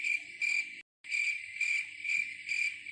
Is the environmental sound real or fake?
real